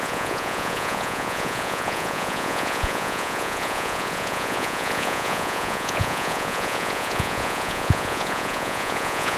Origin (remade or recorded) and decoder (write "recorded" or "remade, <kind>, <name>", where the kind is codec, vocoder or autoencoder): remade, vocoder, Vocos